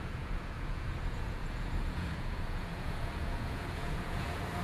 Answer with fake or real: fake